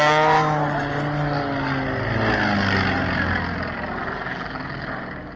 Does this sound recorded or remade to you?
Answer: recorded